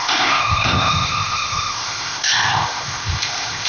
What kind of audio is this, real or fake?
fake